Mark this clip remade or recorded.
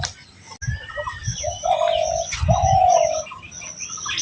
recorded